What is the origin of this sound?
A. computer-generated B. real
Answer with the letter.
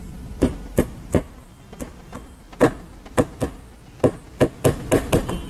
B